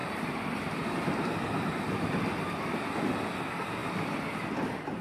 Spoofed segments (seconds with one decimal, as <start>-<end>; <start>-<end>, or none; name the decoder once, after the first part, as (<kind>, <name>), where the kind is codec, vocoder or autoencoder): none